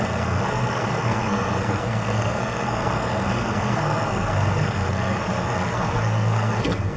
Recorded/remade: remade